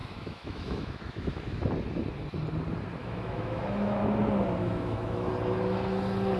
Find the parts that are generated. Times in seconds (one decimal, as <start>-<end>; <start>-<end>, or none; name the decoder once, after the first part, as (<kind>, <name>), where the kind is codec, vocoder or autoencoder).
0.0-1.6 (autoencoder, DAC-VAE); 3.0-4.0; 4.6-5.3